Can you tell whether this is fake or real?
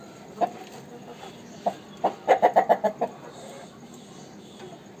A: real